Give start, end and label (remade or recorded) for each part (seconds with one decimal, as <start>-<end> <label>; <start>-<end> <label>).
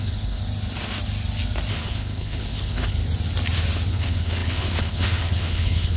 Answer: 0.0-0.4 remade; 0.4-1.7 recorded; 1.7-3.0 remade; 3.0-3.9 recorded; 3.9-6.0 remade